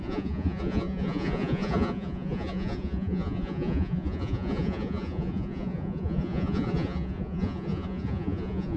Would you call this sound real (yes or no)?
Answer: no